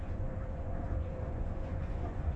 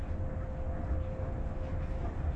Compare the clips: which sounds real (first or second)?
second